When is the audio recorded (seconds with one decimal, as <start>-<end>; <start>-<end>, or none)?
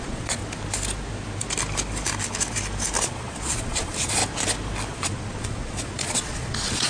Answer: 0.4-3.0; 4.2-4.9